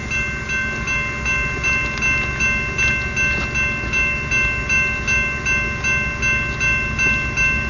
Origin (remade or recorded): recorded